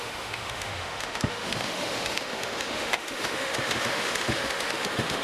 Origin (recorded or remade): remade